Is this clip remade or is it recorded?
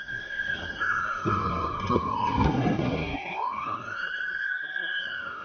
remade